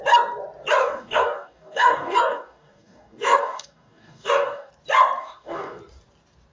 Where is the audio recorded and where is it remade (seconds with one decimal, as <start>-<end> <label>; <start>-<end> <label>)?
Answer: 0.0-0.8 recorded; 0.8-4.7 remade; 4.7-5.2 recorded; 5.2-5.8 remade; 5.8-6.5 recorded